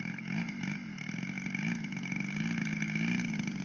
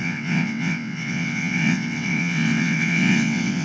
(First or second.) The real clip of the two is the first